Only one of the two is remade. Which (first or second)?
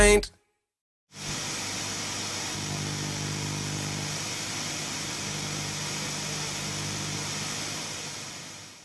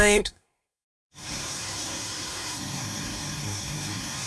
second